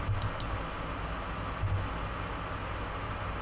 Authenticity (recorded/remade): recorded